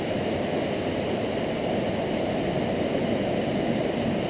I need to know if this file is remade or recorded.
recorded